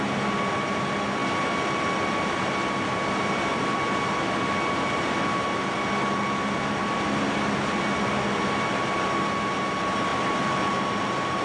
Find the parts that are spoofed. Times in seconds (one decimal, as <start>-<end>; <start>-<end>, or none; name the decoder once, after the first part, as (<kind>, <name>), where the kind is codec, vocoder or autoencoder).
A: none